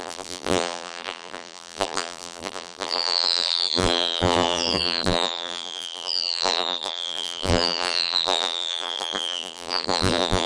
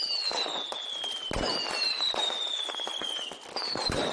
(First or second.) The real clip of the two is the second